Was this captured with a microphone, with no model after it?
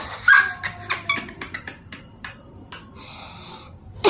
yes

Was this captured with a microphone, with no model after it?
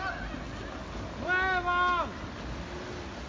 yes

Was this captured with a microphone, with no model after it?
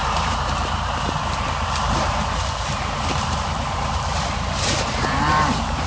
no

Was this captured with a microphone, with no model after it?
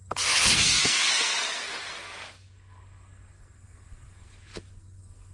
no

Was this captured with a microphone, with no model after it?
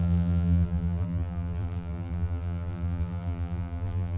no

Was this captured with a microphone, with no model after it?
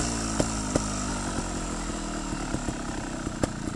yes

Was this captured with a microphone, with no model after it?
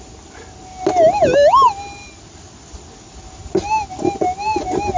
yes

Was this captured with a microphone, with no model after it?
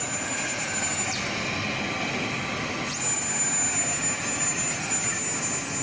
yes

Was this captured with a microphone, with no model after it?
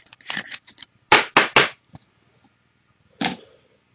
yes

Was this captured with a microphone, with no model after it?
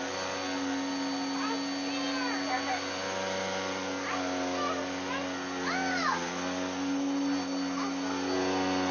yes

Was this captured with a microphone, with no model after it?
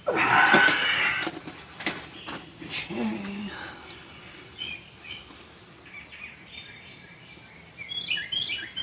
yes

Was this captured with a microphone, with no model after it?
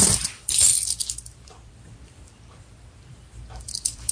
no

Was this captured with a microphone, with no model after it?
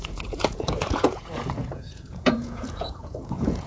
no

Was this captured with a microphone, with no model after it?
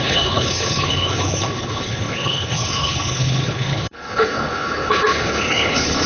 no